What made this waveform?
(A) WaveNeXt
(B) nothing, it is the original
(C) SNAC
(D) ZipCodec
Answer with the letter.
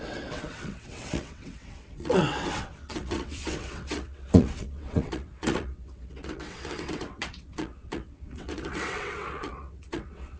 A